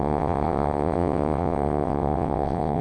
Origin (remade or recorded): remade